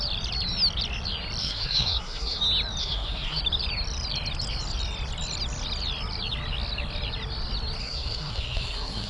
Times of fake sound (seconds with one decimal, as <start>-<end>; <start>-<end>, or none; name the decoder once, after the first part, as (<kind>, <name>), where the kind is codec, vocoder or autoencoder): 1.4-2.4 (codec, SNAC); 2.8-3.4; 7.8-9.1